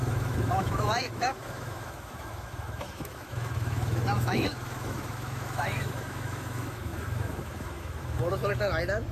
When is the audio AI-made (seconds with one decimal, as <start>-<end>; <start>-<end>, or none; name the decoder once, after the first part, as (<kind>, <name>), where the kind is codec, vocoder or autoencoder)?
0.0-9.1 (autoencoder, DAC-VAE)